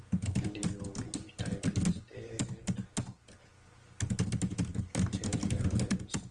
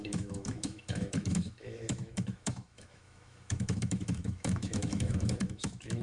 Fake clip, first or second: second